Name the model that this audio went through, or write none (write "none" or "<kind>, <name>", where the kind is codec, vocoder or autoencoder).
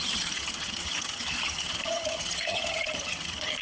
vocoder, HiFi-GAN